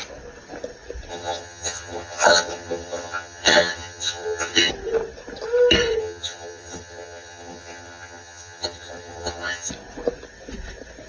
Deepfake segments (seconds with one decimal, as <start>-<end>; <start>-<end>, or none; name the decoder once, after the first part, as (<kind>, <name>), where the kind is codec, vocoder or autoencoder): 1.1-4.7 (vocoder, HiFi-GAN); 6.0-9.7